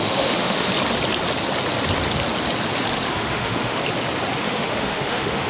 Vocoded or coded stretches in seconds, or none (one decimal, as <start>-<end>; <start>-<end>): 0.0-0.7; 3.1-3.8; 4.4-5.5